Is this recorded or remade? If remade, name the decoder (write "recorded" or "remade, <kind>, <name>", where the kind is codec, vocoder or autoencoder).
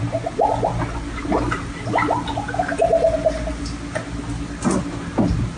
recorded